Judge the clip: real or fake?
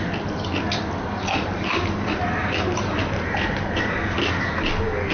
real